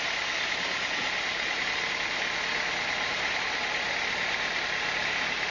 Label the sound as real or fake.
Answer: real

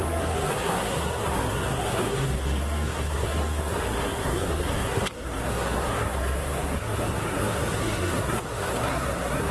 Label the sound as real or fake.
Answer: fake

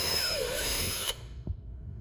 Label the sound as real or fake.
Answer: fake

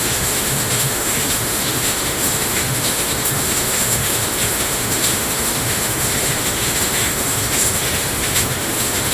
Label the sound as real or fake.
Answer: fake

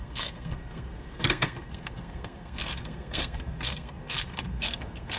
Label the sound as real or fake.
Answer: fake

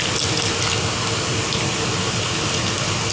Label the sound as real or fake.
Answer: real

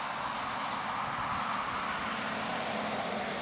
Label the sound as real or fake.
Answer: real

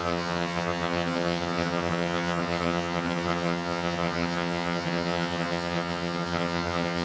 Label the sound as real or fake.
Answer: fake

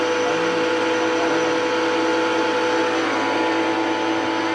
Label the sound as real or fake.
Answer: real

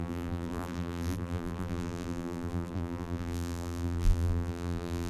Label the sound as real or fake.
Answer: fake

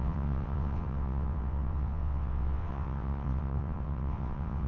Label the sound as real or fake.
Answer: fake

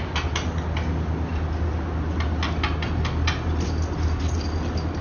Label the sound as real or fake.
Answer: real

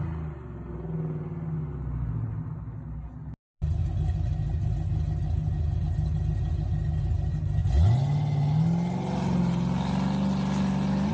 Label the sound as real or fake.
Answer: real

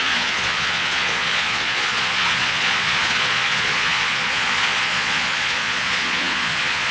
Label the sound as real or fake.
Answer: fake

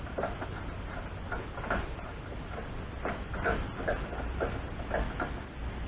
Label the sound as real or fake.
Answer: real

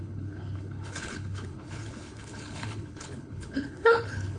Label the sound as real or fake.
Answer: fake